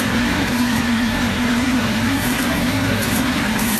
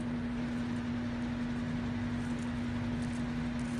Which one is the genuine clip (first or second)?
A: second